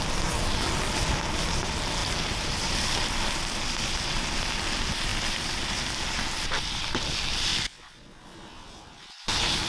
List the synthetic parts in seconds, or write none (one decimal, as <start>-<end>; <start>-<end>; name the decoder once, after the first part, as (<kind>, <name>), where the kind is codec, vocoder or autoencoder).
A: 2.0-2.7 (vocoder, BigVGAN v2)